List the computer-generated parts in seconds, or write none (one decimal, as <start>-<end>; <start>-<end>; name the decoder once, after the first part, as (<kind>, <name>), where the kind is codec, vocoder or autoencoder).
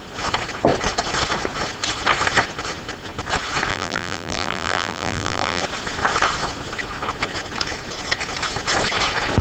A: 3.7-5.6 (vocoder, BigVGAN v2)